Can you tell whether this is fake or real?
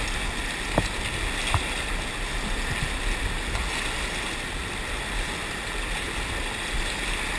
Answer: real